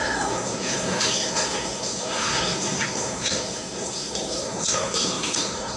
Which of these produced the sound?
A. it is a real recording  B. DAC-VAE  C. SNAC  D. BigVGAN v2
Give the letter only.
C